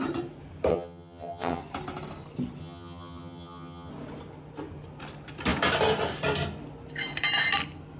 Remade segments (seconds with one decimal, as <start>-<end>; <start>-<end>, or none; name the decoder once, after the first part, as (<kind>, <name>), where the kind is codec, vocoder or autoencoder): 0.7-1.6 (vocoder, HiFi-GAN); 2.6-3.9